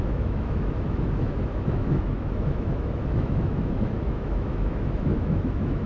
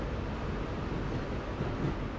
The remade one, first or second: first